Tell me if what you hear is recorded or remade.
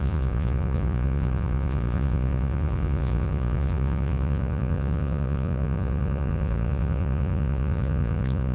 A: remade